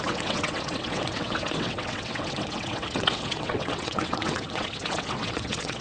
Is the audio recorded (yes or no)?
no